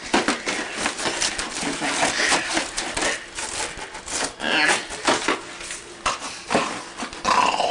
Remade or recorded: recorded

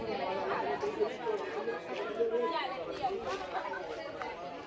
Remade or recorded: recorded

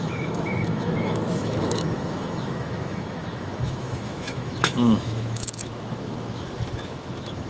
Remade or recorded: remade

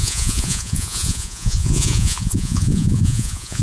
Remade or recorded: remade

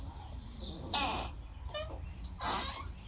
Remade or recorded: recorded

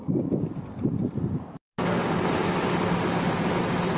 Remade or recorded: recorded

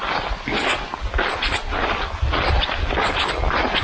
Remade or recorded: recorded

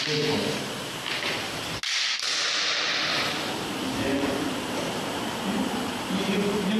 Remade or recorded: recorded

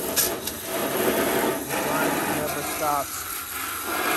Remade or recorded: recorded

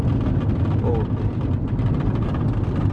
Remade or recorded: recorded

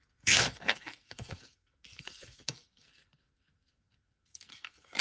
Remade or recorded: remade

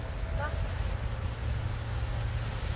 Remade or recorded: recorded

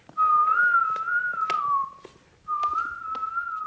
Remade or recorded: recorded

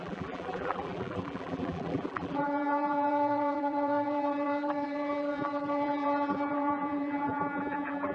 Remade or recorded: remade